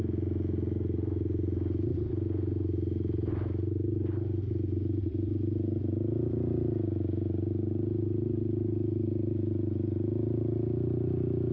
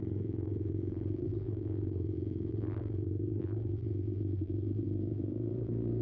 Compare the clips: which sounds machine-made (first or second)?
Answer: second